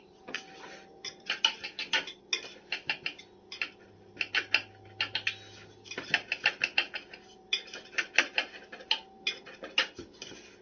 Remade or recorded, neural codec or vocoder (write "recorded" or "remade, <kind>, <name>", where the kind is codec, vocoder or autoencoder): recorded